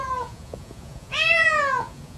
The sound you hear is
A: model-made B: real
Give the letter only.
A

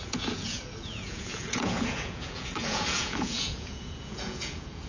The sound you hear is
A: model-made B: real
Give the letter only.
A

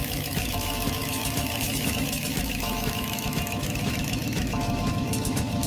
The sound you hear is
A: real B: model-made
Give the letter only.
B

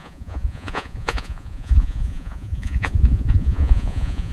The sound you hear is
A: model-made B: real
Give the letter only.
A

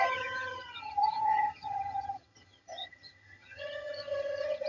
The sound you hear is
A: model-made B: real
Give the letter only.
A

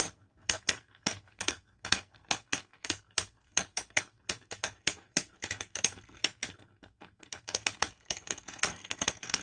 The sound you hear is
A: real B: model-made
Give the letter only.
B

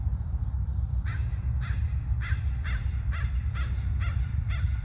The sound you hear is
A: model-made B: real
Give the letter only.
B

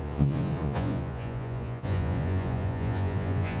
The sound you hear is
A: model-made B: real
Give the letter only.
A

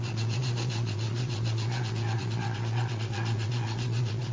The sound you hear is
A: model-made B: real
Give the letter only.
A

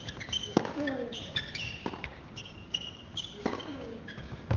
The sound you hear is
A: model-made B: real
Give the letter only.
A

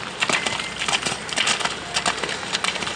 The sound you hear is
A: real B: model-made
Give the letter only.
A